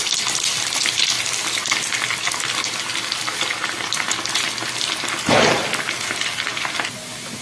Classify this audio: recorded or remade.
recorded